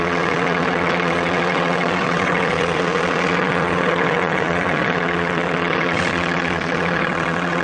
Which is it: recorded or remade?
remade